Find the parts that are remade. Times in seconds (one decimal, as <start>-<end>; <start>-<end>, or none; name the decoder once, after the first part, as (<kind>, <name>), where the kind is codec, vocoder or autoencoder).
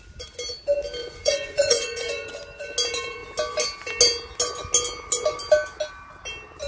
1.0-2.3 (vocoder, Vocos)